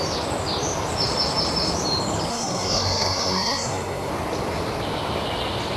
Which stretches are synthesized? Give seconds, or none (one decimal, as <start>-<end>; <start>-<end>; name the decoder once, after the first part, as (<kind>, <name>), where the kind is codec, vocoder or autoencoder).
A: 2.3-4.1 (codec, SNAC)